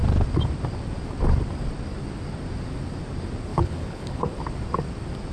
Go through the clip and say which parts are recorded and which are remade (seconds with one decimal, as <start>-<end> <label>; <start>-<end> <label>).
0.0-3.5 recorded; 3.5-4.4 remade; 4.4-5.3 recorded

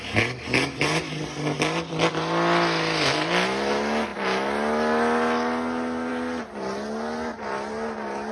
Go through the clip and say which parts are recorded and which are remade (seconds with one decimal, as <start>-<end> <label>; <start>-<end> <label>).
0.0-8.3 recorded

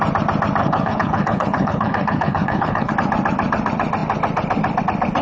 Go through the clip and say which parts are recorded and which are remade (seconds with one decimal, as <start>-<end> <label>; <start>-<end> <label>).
0.0-0.6 recorded; 0.6-2.9 remade; 2.9-5.2 recorded

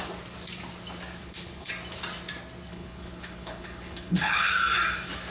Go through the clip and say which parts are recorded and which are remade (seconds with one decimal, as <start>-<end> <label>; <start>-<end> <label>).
0.0-1.2 recorded; 1.2-1.7 remade; 1.7-2.7 recorded; 2.7-4.5 remade; 4.5-5.3 recorded